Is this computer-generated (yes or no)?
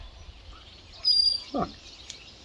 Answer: no